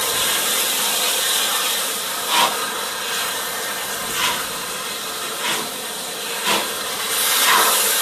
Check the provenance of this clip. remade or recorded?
recorded